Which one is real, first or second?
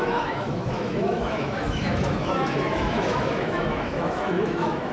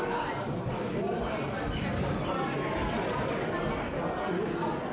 second